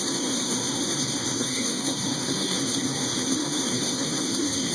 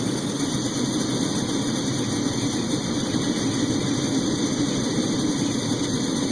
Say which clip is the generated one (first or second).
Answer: first